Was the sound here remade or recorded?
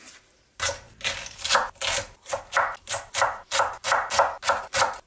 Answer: recorded